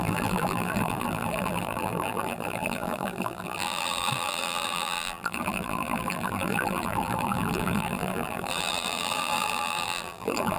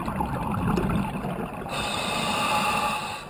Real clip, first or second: second